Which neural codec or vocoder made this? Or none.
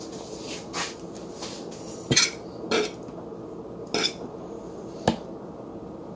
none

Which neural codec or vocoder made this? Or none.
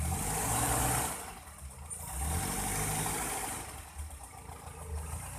none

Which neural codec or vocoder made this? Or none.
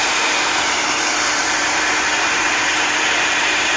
vocoder, BigVGAN v2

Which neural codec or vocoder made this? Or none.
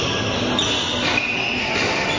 none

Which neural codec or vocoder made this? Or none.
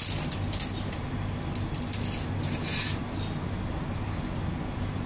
none